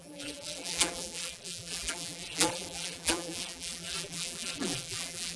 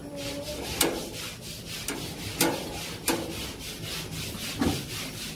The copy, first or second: first